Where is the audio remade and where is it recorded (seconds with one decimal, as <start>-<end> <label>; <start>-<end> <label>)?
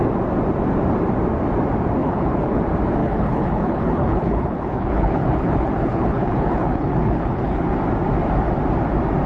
0.0-2.0 recorded; 2.0-2.6 remade; 2.6-3.0 recorded; 3.0-7.7 remade; 7.7-9.3 recorded